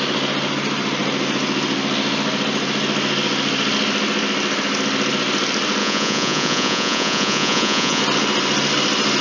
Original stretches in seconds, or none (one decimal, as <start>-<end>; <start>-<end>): 0.0-5.8; 8.0-9.2